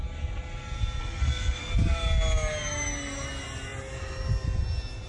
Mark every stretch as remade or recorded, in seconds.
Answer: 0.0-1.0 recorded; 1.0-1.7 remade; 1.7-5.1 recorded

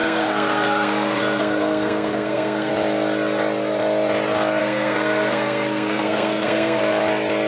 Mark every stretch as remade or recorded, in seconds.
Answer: 0.0-2.7 remade; 2.7-4.6 recorded; 4.6-6.8 remade; 6.8-7.5 recorded

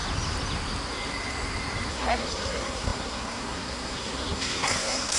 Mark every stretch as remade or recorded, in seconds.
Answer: 0.0-1.9 recorded; 1.9-5.2 remade

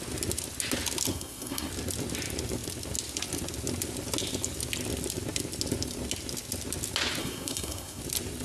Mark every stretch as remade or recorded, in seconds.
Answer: 0.0-1.1 recorded; 1.1-1.7 remade; 1.7-7.2 recorded; 7.2-8.0 remade; 8.0-8.4 recorded